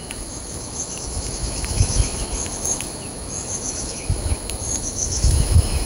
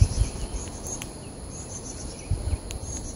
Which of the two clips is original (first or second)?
second